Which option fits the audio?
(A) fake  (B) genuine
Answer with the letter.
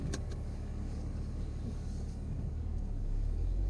A